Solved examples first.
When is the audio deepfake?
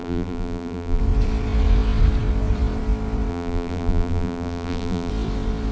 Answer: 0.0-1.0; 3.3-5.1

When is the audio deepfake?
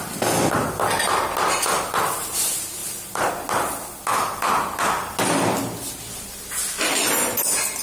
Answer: 2.8-3.3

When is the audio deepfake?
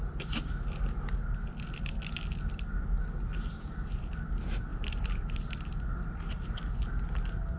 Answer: 4.7-5.4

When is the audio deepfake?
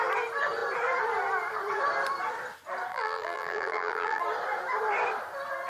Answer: 2.9-4.2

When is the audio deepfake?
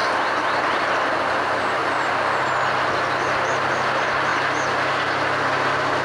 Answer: 0.0-0.8